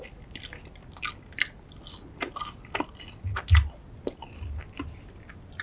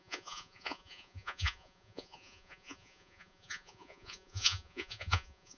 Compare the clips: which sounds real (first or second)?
first